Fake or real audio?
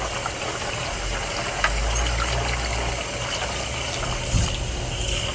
real